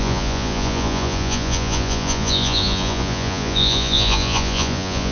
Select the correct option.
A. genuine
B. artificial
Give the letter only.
B